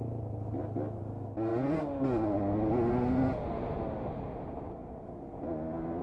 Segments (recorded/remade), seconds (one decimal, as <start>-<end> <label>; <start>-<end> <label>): 0.0-6.0 recorded